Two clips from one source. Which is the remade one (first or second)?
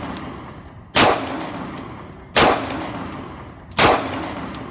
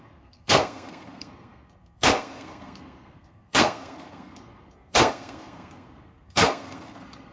second